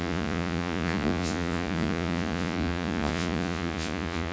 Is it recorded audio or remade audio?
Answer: remade